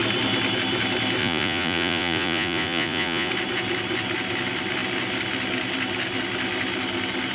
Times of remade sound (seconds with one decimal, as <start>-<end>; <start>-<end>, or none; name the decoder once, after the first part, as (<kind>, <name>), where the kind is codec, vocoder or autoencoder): 1.2-3.3 (vocoder, Vocos)

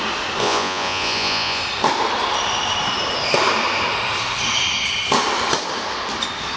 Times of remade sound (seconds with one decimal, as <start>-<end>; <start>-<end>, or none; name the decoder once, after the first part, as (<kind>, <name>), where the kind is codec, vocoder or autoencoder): 0.4-1.6 (vocoder, Vocos)

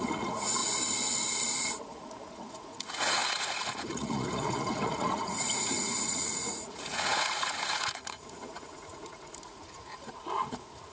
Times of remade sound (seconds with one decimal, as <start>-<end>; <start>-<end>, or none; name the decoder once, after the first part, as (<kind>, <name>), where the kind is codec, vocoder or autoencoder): 0.0-0.6 (vocoder, Vocos); 1.8-10.9

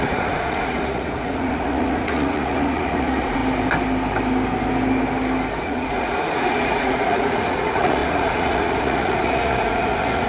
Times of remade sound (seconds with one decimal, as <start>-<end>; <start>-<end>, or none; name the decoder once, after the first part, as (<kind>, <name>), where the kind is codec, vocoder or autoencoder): 0.0-3.4 (vocoder, Vocos); 5.6-10.3

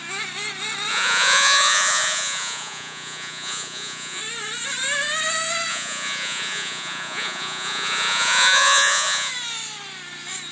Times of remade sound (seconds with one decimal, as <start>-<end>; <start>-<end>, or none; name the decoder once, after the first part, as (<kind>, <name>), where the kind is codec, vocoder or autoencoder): 0.9-4.2 (vocoder, Vocos); 5.7-9.3

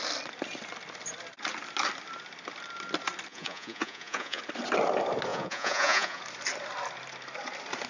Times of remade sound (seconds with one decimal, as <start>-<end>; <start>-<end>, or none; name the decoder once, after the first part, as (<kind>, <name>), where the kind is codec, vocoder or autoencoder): 3.3-4.4 (vocoder, Vocos); 5.3-6.2

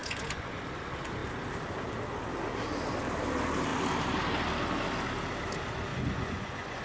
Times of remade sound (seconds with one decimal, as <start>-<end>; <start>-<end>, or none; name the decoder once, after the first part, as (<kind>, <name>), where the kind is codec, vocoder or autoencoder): 0.0-0.6 (vocoder, Vocos); 5.9-6.8

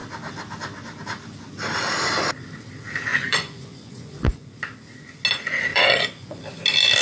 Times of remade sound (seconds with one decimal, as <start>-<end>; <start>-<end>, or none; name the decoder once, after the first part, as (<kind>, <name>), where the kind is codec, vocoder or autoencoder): 3.1-4.5 (vocoder, Vocos); 5.7-6.4